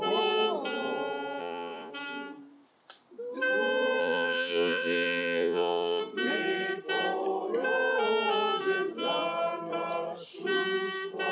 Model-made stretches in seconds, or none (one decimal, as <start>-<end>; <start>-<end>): 1.4-1.9; 4.0-6.0